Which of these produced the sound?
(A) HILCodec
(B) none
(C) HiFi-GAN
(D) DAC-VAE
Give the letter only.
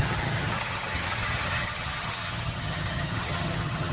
C